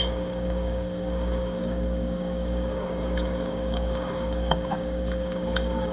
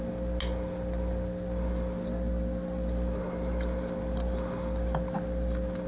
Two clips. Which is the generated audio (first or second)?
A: first